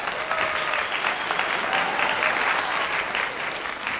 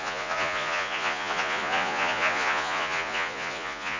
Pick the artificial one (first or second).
second